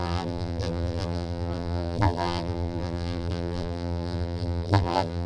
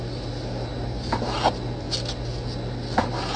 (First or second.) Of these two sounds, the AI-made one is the first